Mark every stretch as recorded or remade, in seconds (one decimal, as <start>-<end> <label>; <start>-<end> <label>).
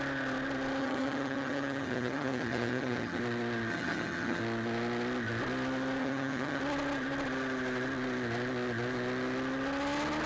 0.0-0.8 recorded; 0.8-3.2 remade; 3.2-3.7 recorded; 3.7-4.4 remade; 4.4-6.0 recorded; 6.0-6.6 remade; 6.6-10.3 recorded